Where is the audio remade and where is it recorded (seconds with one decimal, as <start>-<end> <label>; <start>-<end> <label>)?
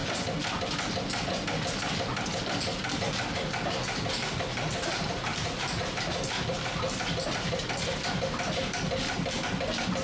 0.0-5.3 recorded; 5.3-6.2 remade; 6.2-10.0 recorded